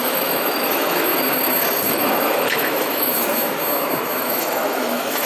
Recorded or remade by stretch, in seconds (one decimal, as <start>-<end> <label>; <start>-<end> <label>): 0.0-1.1 remade; 1.1-1.9 recorded; 1.9-3.1 remade; 3.1-4.2 recorded; 4.2-5.3 remade